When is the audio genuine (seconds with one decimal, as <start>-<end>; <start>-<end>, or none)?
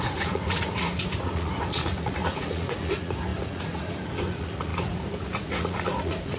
none